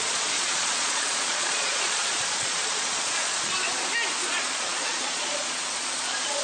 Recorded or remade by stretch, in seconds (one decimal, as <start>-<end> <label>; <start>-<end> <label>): 0.0-3.5 remade; 3.5-4.2 recorded; 4.2-6.4 remade